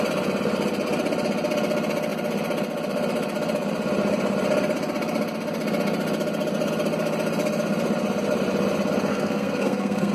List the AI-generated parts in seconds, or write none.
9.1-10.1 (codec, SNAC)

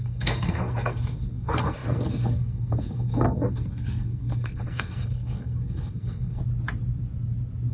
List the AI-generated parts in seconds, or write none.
0.0-6.4 (codec, SNAC)

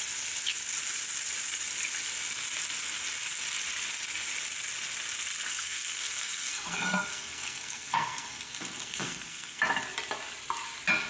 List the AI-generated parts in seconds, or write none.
5.5-9.6 (codec, SNAC)

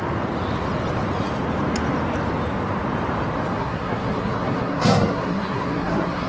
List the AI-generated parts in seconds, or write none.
3.5-6.3 (codec, SNAC)

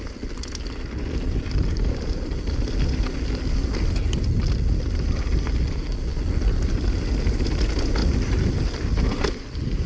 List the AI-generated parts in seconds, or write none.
8.0-8.5 (vocoder, BigVGAN v2)

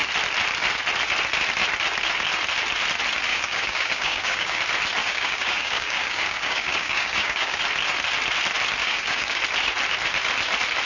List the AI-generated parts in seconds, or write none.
3.3-4.6 (codec, DAC); 5.0-7.6; 8.8-9.4

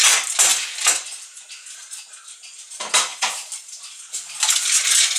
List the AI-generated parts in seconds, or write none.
none

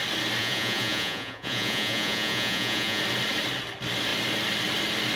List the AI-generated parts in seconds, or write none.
0.4-3.0 (vocoder, Vocos)